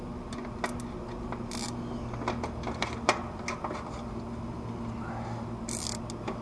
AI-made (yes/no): no